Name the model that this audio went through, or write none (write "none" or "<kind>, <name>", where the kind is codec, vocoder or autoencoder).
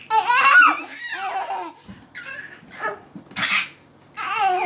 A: none